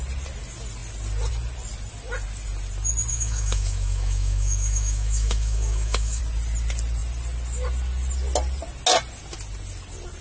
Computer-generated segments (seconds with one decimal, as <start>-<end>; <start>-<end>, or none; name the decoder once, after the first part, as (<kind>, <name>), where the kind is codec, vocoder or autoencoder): 3.1-6.2 (autoencoder, DAC-VAE)